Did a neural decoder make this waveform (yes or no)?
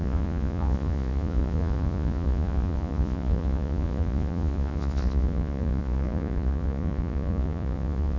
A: yes